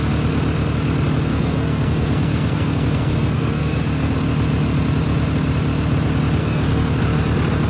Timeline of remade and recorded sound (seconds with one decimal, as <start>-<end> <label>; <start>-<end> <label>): 0.0-1.3 recorded; 1.3-4.1 remade; 4.1-6.4 recorded; 6.4-7.0 remade; 7.0-7.7 recorded